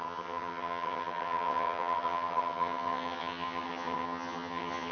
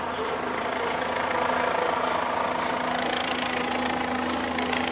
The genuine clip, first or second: second